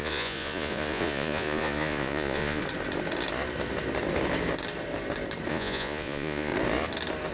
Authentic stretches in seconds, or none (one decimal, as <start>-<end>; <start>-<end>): 2.6-5.5; 6.5-7.3